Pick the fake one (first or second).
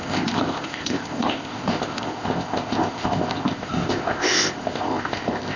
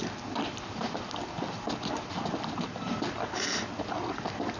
first